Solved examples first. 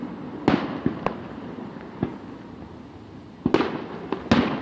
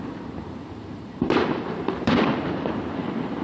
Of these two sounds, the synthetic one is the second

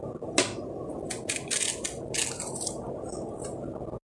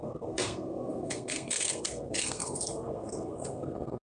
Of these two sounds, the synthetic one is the second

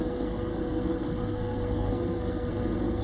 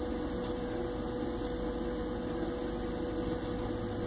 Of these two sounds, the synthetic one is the first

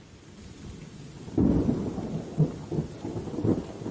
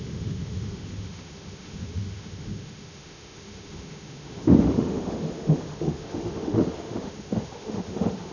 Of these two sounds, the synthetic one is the second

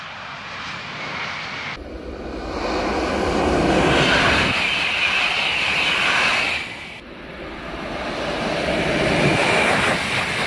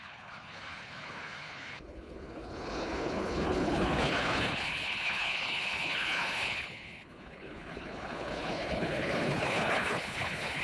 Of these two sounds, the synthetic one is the second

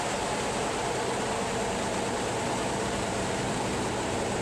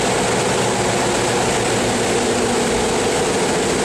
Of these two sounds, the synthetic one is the first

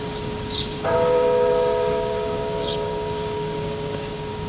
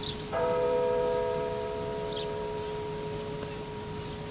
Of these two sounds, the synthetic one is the first